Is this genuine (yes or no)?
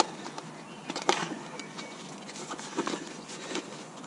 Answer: no